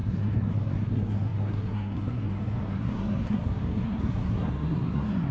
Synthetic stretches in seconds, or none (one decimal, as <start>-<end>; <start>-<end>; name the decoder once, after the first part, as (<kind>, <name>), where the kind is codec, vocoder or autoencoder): 0.0-5.3 (codec, SNAC)